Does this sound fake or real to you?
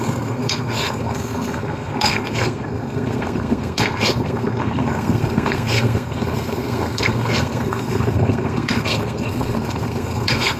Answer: fake